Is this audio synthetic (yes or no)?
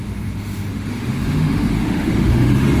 yes